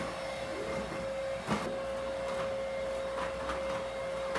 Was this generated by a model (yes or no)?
no